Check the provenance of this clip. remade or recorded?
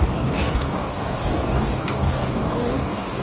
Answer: remade